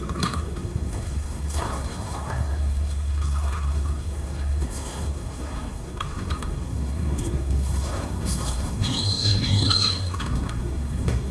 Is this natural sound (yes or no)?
no